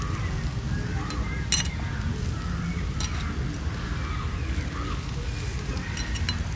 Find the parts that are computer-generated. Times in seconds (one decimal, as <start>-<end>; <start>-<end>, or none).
none